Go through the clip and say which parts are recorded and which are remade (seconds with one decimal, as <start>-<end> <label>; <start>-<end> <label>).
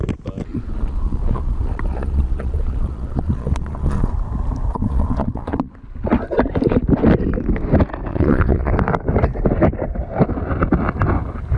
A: 0.0-0.5 recorded; 0.5-4.1 remade; 4.1-4.7 recorded; 4.7-5.7 remade; 5.7-8.1 recorded; 8.1-8.7 remade; 8.7-11.6 recorded